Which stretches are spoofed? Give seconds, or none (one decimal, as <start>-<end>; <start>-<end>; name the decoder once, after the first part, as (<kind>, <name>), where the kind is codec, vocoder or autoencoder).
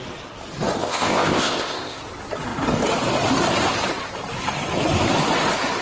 0.8-2.0 (codec, ZipCodec)